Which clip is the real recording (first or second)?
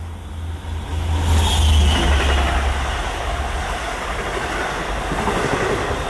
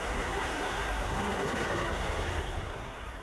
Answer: first